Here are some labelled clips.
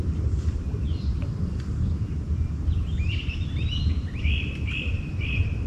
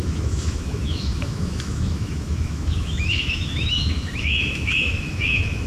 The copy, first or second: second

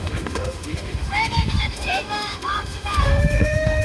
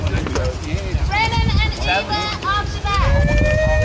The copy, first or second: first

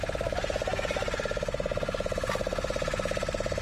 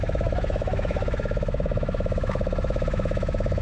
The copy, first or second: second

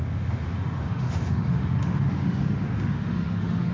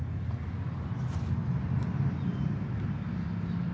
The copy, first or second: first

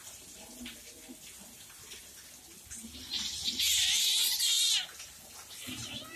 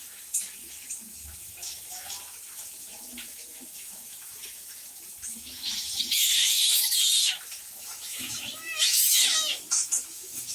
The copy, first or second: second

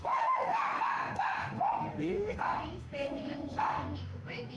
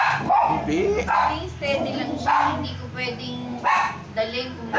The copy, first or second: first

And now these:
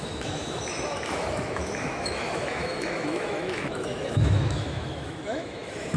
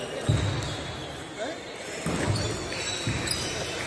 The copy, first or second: first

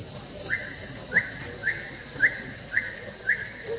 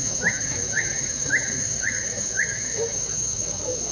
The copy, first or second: second